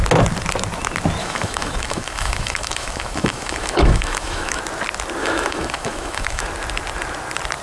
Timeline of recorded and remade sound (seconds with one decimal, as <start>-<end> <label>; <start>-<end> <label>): 0.0-1.2 recorded; 1.2-4.6 remade; 4.6-5.2 recorded; 5.2-6.4 remade; 6.4-7.6 recorded